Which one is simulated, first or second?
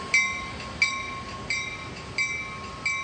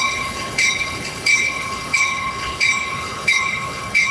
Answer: second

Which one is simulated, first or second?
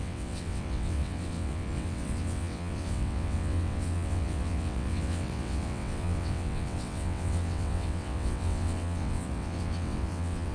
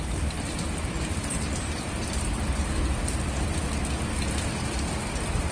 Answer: first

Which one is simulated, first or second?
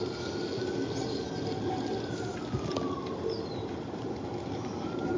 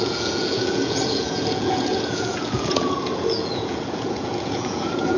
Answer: second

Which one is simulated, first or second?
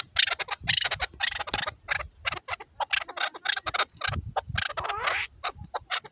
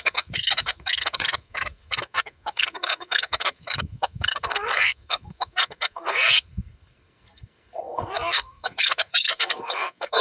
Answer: second